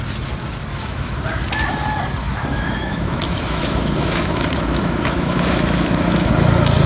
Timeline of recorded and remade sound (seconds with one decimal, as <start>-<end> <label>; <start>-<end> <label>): 0.0-0.7 recorded; 0.7-1.2 remade; 1.2-2.2 recorded; 2.2-6.3 remade; 6.3-6.9 recorded